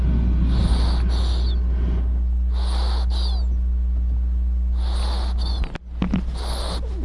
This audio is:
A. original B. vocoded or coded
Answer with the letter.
A